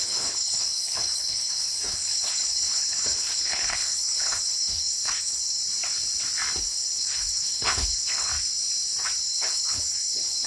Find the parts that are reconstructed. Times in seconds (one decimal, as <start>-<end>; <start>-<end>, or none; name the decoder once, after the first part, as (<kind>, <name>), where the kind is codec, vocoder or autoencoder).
0.0-5.6 (codec, HILCodec); 6.6-8.3; 9.2-10.5